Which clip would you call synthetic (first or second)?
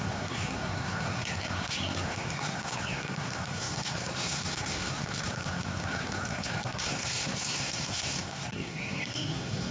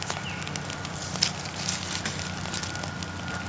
first